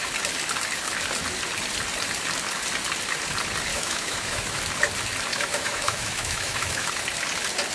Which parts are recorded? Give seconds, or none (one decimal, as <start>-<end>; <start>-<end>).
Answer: 0.0-3.7; 4.6-5.3; 6.9-7.7